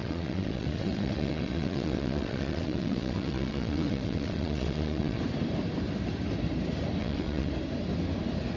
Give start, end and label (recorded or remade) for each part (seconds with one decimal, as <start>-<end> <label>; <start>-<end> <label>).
0.0-5.2 remade; 5.2-7.0 recorded; 7.0-7.5 remade; 7.5-8.6 recorded